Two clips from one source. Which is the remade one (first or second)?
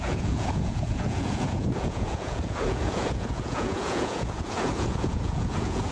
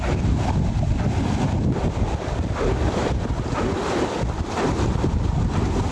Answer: first